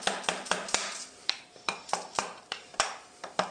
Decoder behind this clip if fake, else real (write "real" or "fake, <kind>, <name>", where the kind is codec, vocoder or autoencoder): fake, vocoder, BigVGAN v2